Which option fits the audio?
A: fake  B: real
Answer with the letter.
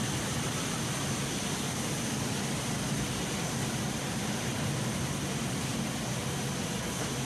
B